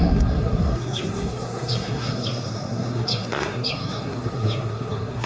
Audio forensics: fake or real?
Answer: fake